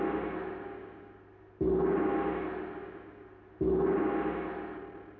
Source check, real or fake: real